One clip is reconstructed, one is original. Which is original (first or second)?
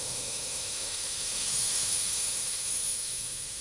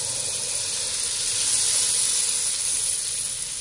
second